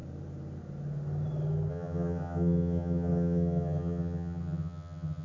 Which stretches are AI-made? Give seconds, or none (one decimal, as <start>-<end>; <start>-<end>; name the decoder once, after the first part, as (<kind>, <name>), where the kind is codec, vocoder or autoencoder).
1.7-5.2 (vocoder, HiFi-GAN)